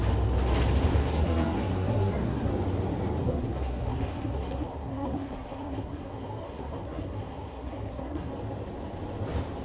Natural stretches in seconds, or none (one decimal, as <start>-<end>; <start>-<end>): 0.0-1.0; 2.5-3.2; 8.3-9.6